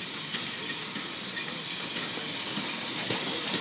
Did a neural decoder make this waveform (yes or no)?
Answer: no